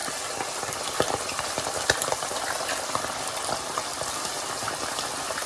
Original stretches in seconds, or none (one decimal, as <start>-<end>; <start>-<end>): 0.0-5.5